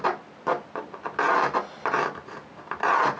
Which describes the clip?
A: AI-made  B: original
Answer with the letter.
B